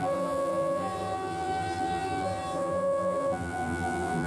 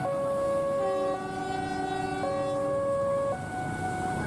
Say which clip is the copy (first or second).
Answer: first